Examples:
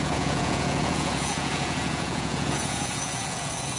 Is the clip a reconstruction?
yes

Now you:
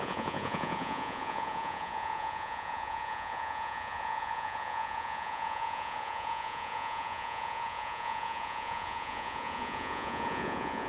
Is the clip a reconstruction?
yes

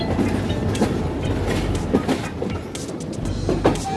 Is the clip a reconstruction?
no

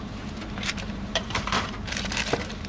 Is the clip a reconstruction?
yes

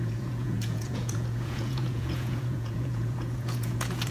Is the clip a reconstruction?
yes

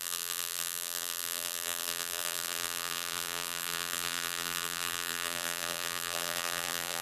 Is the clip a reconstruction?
yes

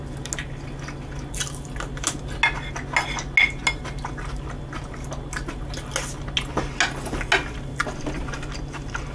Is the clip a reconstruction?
no